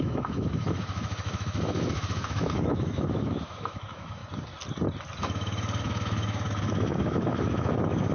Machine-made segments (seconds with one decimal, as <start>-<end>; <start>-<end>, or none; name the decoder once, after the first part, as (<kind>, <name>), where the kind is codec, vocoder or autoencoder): 0.0-4.2 (autoencoder, DAC-VAE); 5.2-8.1